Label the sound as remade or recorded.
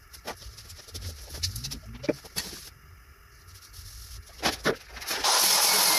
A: recorded